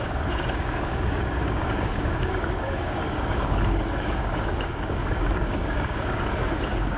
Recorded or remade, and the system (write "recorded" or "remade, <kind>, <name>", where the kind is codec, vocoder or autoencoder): remade, codec, DAC